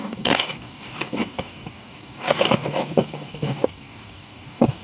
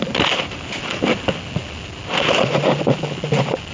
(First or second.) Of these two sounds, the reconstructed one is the first